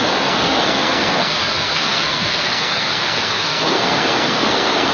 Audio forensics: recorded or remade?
remade